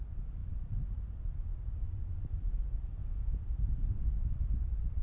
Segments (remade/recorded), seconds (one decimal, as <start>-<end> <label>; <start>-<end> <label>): 0.0-5.0 recorded